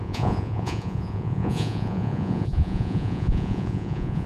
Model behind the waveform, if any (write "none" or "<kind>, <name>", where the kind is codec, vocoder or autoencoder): vocoder, Vocos